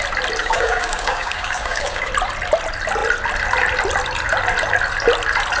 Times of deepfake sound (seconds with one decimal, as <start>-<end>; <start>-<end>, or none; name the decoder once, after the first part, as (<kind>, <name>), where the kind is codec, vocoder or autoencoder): 0.4-2.1 (codec, DAC)